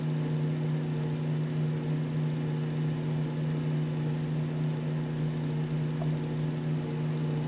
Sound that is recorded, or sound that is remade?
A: recorded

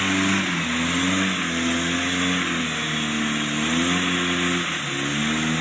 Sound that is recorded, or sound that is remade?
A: recorded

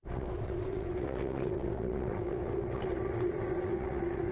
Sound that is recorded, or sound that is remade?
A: remade